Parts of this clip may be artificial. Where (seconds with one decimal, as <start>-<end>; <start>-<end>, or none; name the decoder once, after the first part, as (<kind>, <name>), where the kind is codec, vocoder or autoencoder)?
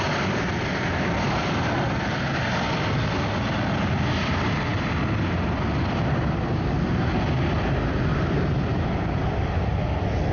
none